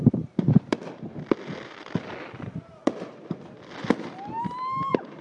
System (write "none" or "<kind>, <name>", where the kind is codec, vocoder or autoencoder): vocoder, BigVGAN v2